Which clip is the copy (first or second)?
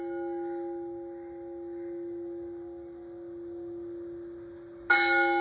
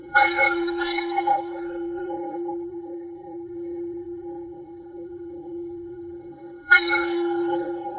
second